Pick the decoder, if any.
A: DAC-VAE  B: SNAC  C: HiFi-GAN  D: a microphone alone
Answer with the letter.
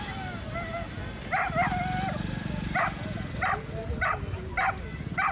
D